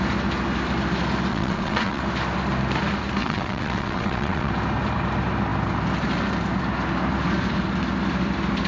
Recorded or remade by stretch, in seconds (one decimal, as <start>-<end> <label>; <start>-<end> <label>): 0.0-1.3 recorded; 1.3-2.0 remade; 2.0-3.2 recorded; 3.2-4.5 remade; 4.5-8.7 recorded